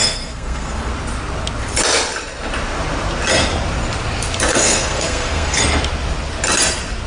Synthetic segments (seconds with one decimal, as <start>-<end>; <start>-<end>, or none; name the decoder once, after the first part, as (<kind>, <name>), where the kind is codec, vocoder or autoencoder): 0.0-0.9 (codec, SNAC); 4.5-5.6